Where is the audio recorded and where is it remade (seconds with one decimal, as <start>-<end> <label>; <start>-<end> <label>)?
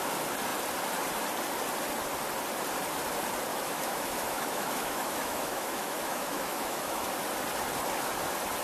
0.0-3.5 recorded; 3.5-7.1 remade; 7.1-8.6 recorded